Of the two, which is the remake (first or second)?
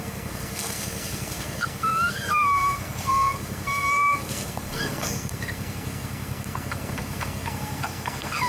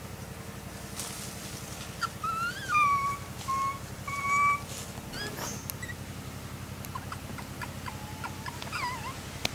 first